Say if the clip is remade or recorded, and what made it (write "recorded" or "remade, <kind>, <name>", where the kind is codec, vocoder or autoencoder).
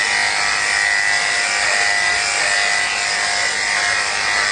recorded